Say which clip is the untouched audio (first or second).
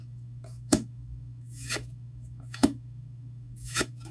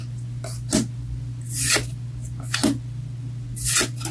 second